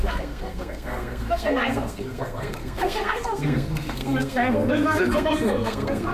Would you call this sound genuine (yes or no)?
no